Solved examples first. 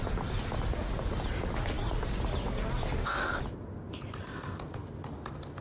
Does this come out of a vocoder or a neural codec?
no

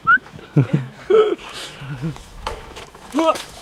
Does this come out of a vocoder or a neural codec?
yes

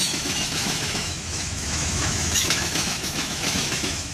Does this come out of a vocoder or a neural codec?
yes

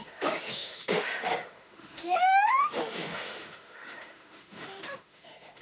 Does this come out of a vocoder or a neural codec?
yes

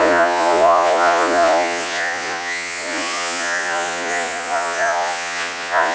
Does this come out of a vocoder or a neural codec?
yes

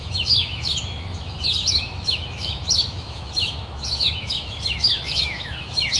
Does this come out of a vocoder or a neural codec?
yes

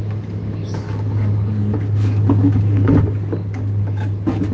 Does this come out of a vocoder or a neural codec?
yes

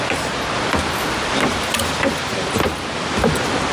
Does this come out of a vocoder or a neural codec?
no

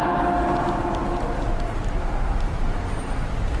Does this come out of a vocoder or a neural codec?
no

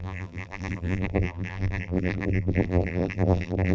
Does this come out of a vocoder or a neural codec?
yes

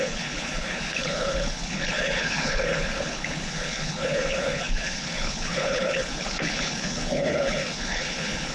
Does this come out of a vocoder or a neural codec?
yes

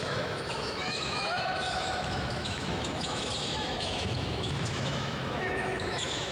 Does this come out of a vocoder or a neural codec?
yes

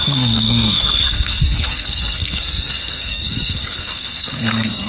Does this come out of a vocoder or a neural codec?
yes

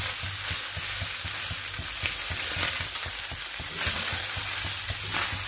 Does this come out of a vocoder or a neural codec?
no